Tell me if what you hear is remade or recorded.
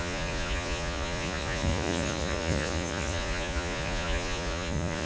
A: remade